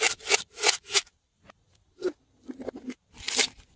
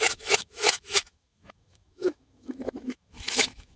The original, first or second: first